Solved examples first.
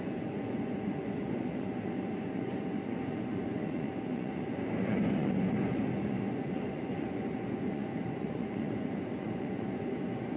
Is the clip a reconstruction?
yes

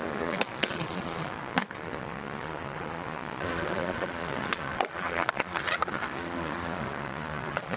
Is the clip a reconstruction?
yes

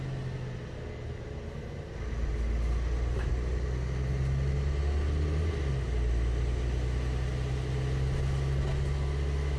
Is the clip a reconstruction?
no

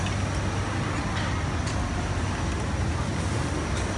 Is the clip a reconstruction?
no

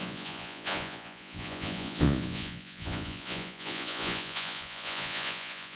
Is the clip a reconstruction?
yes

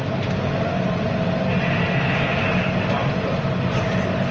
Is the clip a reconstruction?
no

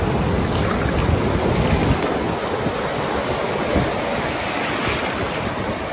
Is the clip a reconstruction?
no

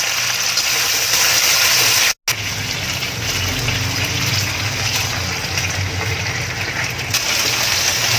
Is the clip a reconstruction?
no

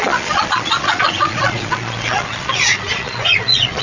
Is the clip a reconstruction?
yes